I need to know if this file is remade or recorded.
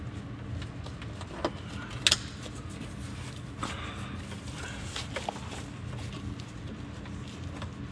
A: recorded